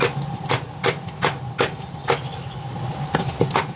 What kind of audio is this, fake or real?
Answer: real